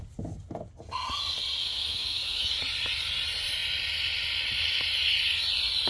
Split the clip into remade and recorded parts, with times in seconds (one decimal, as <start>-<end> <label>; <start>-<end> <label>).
0.0-1.6 recorded; 1.6-2.5 remade; 2.5-5.9 recorded